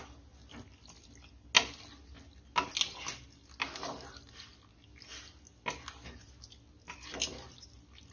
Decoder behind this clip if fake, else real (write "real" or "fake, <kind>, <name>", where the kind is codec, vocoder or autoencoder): real